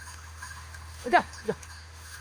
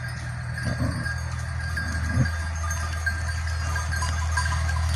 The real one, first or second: second